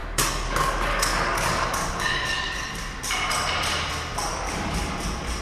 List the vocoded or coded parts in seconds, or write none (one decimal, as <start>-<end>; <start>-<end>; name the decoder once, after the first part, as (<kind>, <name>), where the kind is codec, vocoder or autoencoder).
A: 0.0-2.7 (codec, DAC); 4.3-4.9